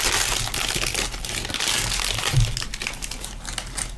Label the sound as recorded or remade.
recorded